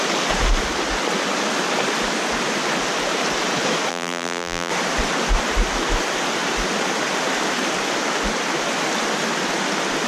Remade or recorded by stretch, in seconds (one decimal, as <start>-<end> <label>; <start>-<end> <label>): 0.0-3.9 recorded; 3.9-4.7 remade; 4.7-10.1 recorded